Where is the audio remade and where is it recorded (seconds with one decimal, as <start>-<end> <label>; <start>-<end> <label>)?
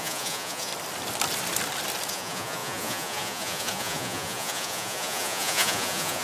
0.0-0.7 remade; 0.7-2.1 recorded; 2.1-6.2 remade